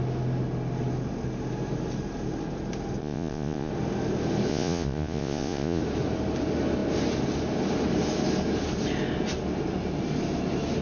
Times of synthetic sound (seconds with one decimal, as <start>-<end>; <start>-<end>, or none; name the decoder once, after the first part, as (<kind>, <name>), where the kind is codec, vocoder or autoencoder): 3.0-3.7 (vocoder, Vocos); 4.5-5.8